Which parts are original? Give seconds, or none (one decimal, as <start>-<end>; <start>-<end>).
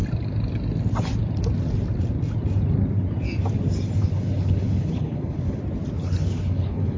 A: 0.0-4.0; 5.6-6.0